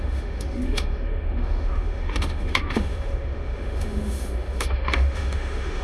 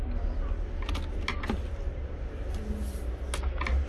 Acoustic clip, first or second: second